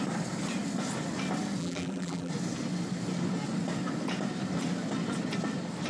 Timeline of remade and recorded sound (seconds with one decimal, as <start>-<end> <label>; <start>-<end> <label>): 0.0-1.6 recorded; 1.6-2.3 remade; 2.3-5.9 recorded